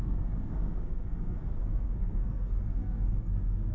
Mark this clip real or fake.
fake